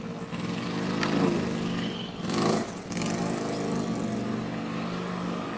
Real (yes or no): yes